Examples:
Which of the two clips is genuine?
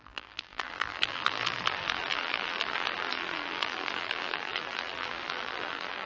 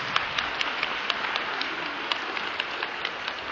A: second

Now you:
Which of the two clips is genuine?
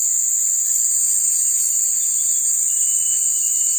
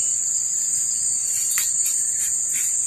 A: first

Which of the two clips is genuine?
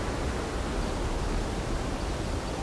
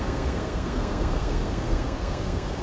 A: first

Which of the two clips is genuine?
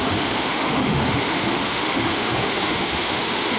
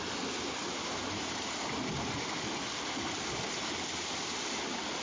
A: second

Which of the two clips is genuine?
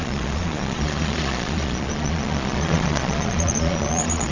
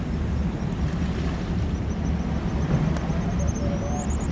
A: second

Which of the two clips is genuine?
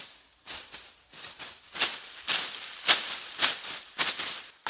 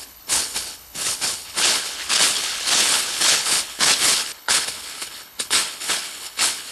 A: first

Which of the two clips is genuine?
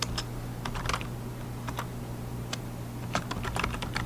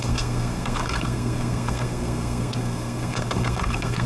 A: first